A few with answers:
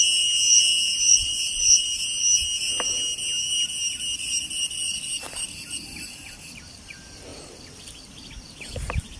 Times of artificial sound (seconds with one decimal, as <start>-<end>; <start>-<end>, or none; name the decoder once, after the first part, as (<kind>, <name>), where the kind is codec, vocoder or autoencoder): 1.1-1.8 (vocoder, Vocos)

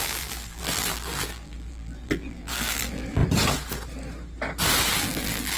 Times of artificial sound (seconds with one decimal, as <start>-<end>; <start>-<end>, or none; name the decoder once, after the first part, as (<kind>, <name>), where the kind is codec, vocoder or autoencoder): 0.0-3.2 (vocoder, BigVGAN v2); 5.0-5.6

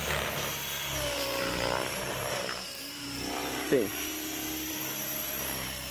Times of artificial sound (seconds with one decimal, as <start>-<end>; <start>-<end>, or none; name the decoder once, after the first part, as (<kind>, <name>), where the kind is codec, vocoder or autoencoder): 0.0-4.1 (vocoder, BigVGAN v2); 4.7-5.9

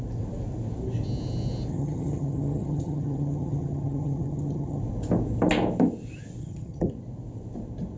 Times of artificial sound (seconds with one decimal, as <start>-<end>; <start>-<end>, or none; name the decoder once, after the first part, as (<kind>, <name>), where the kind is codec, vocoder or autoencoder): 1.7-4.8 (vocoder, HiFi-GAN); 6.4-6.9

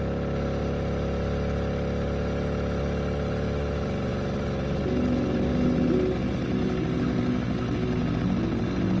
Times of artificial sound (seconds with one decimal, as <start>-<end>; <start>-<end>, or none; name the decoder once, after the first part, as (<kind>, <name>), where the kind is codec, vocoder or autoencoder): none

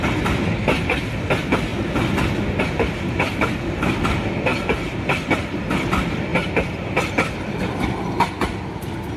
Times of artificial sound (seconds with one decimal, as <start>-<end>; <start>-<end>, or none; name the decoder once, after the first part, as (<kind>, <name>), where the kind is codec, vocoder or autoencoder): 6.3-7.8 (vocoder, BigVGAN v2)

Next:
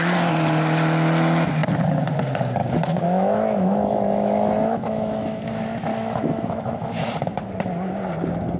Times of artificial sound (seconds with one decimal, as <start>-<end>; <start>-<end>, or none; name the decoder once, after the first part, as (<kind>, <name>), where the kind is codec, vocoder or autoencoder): 2.6-5.4 (autoencoder, DAC-VAE); 5.9-7.1

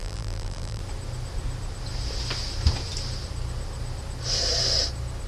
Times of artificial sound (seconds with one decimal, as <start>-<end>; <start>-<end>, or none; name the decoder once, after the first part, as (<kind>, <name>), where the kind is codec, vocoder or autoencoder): 0.0-0.8 (vocoder, BigVGAN v2)